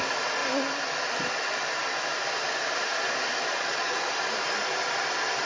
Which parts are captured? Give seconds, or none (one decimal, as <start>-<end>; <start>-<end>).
0.0-3.5; 4.1-5.5